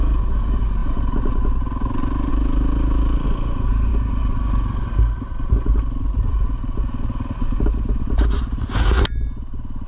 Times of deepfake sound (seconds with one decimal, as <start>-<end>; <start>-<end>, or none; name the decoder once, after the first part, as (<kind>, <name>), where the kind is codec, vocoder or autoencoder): none